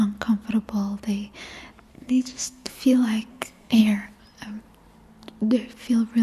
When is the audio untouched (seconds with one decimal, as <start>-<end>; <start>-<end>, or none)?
0.0-1.9; 2.7-3.3; 3.8-6.2